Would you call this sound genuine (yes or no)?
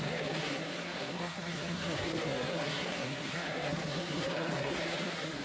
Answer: no